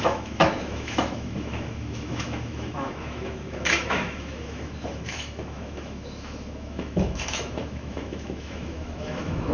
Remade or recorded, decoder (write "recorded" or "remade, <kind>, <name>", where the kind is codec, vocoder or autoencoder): remade, autoencoder, DAC-VAE